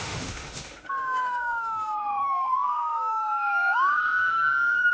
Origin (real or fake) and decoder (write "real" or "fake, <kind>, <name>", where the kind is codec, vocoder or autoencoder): fake, autoencoder, DAC-VAE